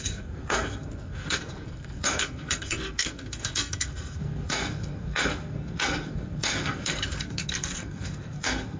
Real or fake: fake